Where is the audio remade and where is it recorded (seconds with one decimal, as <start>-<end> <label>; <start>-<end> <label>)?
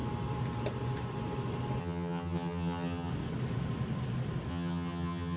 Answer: 0.0-1.8 recorded; 1.8-3.1 remade; 3.1-4.5 recorded; 4.5-5.4 remade